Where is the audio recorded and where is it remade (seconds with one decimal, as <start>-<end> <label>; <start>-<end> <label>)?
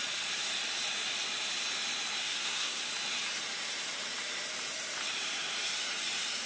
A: 0.0-2.2 recorded; 2.2-2.9 remade; 2.9-6.5 recorded